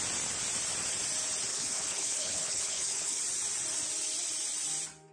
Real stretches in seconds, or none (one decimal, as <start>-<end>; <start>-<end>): 0.0-1.5; 3.2-5.1